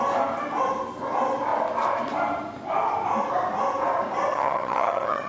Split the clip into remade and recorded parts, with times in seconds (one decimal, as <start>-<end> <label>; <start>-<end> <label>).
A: 0.0-4.3 recorded; 4.3-5.3 remade